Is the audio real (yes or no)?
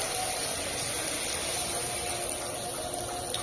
yes